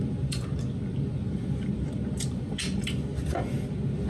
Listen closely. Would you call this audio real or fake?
real